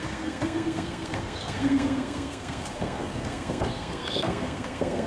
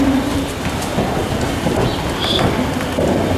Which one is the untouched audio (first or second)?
second